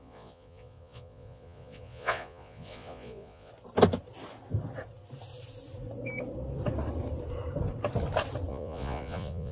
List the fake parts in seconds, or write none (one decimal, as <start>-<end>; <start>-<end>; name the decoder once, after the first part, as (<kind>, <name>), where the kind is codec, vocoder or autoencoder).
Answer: 0.0-3.5 (vocoder, Vocos); 8.5-9.5